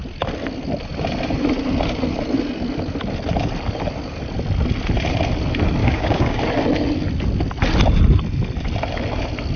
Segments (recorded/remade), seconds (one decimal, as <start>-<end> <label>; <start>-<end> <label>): 0.0-5.8 recorded; 5.8-6.4 remade; 6.4-9.6 recorded